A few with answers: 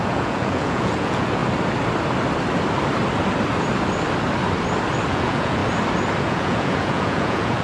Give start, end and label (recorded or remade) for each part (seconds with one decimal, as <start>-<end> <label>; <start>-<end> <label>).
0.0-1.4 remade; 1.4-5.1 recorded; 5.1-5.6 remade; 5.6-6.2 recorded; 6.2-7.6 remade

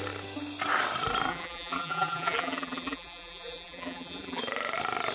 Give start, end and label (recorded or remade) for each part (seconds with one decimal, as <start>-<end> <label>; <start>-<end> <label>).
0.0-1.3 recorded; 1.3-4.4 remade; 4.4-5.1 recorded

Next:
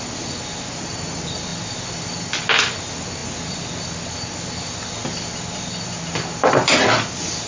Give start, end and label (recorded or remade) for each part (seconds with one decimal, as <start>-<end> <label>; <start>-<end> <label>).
0.0-7.5 recorded

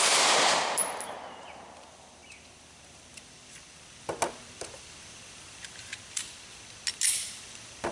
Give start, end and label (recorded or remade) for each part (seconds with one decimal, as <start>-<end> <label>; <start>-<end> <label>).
0.0-2.2 remade; 2.2-5.3 recorded; 5.3-5.9 remade; 5.9-7.5 recorded; 7.5-7.9 remade

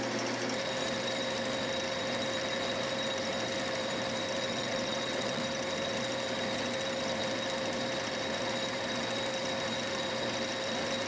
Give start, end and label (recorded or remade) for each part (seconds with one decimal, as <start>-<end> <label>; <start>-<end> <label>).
0.0-4.5 recorded; 4.5-5.4 remade; 5.4-11.1 recorded